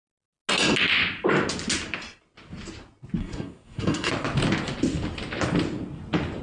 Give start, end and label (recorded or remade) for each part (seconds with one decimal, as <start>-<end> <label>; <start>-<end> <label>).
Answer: 0.0-3.2 recorded; 3.2-4.1 remade; 4.1-6.4 recorded